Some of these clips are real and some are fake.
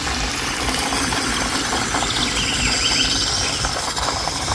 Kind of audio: real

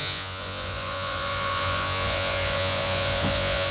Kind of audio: fake